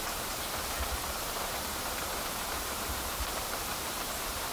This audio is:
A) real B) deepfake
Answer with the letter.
B